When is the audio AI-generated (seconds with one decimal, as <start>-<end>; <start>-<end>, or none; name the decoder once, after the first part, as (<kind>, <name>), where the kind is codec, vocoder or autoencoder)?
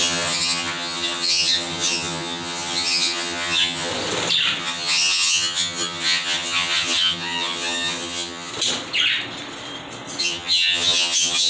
0.0-3.9 (vocoder, HiFi-GAN); 4.6-8.5; 10.2-11.5